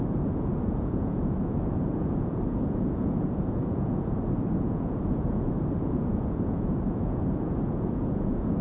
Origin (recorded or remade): remade